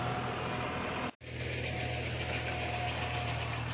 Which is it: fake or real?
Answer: real